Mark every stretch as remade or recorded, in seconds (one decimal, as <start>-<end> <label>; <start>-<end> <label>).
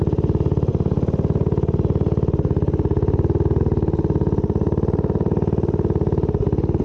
0.0-6.8 recorded